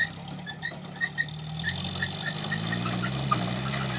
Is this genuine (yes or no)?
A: yes